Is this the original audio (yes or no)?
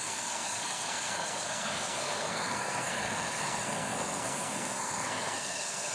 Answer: no